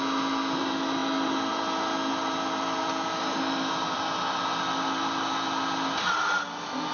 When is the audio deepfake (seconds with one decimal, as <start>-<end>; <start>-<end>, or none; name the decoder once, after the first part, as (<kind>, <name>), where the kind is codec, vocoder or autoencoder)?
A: 1.0-5.1 (vocoder, BigVGAN v2)